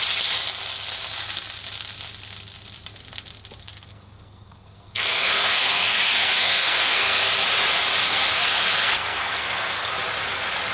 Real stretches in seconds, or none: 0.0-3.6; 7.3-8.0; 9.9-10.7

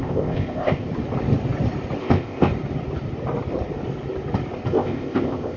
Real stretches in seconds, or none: 0.9-2.0; 2.5-4.7

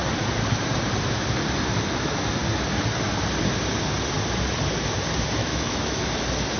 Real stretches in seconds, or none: 0.0-5.4; 6.1-6.6

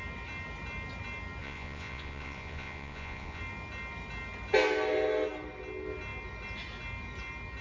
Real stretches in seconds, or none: 0.0-1.4; 3.4-7.6

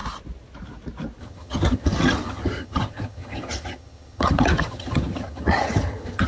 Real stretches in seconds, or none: 0.0-1.2